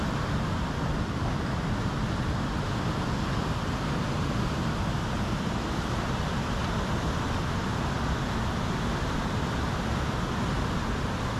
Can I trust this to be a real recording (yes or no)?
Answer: yes